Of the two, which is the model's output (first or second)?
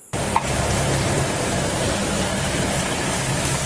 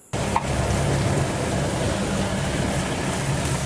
first